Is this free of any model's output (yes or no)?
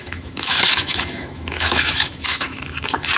no